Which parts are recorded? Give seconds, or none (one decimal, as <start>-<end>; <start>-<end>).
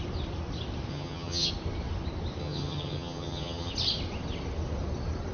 0.0-0.9; 1.5-2.4; 3.7-5.3